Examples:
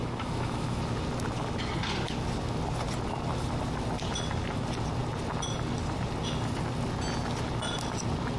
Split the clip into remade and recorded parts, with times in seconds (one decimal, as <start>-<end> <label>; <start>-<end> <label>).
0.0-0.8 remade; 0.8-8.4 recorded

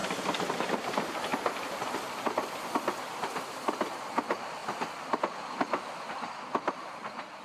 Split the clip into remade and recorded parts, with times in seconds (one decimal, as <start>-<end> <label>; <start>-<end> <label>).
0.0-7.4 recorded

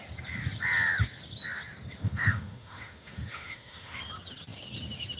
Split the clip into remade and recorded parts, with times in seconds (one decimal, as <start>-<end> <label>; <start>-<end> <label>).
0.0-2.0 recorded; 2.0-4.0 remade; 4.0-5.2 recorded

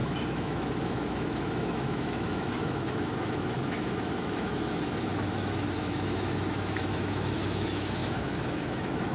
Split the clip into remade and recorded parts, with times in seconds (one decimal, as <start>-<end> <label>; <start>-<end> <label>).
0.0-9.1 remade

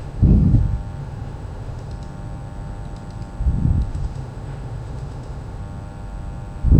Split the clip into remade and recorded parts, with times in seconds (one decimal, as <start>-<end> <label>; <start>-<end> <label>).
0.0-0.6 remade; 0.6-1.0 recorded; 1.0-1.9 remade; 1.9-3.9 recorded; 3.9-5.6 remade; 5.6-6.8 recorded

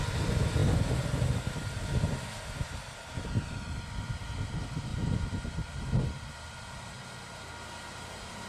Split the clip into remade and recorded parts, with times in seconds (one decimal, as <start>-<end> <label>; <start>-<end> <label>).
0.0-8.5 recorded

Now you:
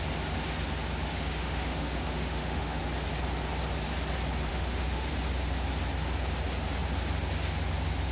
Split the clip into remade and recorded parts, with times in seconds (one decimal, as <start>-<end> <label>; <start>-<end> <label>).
0.0-1.1 recorded; 1.1-2.8 remade; 2.8-4.5 recorded; 4.5-5.1 remade; 5.1-8.1 recorded